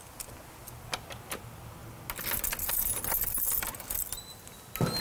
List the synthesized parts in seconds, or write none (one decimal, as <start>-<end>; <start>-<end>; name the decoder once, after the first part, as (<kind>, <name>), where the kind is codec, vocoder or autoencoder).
none